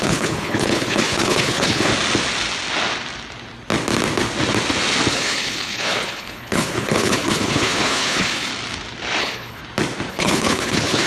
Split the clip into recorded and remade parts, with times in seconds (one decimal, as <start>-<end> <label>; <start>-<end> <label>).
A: 0.0-1.9 remade; 1.9-5.1 recorded; 5.1-8.5 remade; 8.5-9.2 recorded; 9.2-9.6 remade; 9.6-10.1 recorded; 10.1-11.1 remade